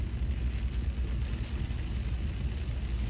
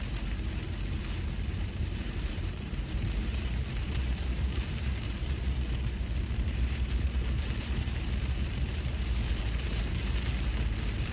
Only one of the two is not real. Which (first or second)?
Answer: second